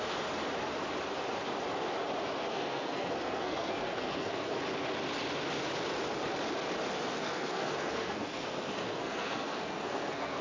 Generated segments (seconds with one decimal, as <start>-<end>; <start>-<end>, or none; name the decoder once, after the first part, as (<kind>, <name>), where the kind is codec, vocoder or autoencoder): 2.5-4.6 (codec, SNAC); 7.1-10.4